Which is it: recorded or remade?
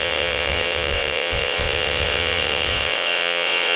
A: remade